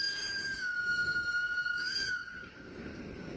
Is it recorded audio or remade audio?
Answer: remade